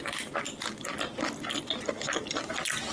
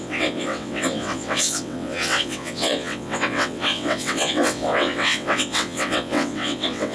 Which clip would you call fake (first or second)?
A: second